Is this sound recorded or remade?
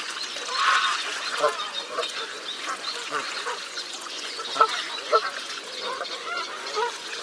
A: remade